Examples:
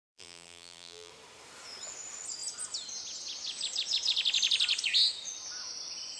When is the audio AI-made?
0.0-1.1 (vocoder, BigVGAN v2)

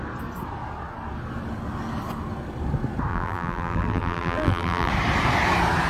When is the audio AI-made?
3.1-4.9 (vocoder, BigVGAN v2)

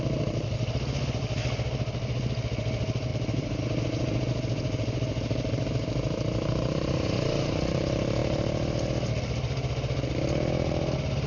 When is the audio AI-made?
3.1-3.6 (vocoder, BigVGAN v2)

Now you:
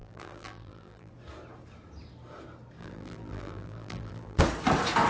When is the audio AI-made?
0.0-1.1 (vocoder, BigVGAN v2); 2.8-4.4

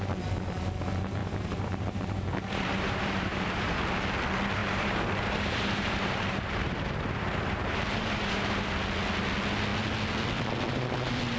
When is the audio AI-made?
1.2-3.7 (vocoder, BigVGAN v2); 4.6-8.6